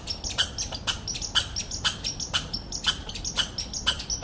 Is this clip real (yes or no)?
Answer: yes